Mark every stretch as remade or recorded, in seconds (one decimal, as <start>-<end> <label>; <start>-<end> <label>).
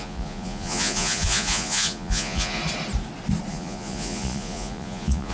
0.0-2.6 remade; 2.6-3.5 recorded; 3.5-5.3 remade